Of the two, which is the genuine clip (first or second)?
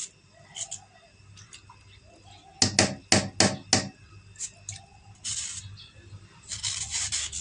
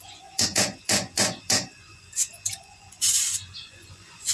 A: first